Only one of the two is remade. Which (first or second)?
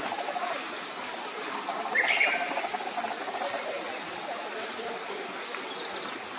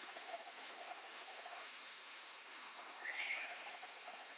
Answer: second